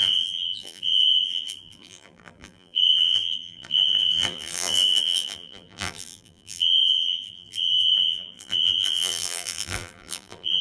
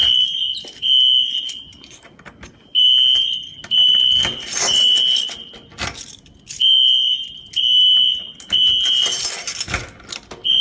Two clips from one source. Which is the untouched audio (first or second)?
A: second